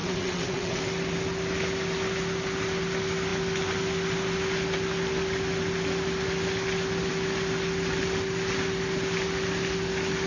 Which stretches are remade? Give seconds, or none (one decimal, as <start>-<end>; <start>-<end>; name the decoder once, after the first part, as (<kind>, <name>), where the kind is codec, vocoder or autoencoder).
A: 0.0-0.8 (vocoder, WaveNeXt)